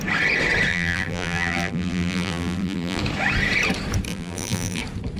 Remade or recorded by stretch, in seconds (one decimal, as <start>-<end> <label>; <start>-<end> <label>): 0.0-0.7 recorded; 0.7-3.0 remade; 3.0-4.1 recorded; 4.1-4.8 remade; 4.8-5.2 recorded